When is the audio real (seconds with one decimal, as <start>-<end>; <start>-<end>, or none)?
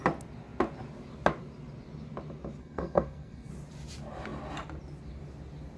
0.0-2.6; 3.5-5.8